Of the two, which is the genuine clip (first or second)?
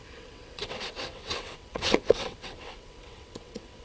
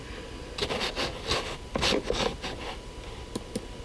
second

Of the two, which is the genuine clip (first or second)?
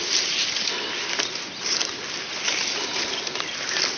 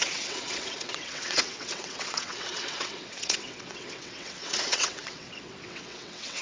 first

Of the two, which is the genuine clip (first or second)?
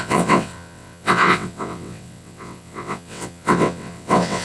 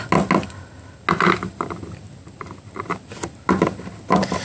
second